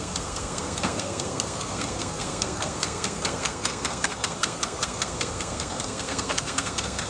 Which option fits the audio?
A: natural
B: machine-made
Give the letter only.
B